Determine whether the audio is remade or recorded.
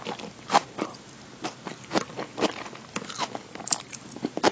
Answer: recorded